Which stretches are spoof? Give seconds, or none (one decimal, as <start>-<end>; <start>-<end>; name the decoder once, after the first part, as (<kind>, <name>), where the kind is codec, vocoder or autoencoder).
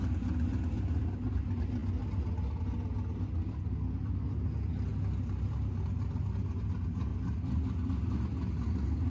7.1-7.6 (vocoder, BigVGAN v2)